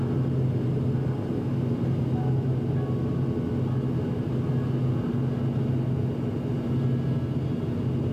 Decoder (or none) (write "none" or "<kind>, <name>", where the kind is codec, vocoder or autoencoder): none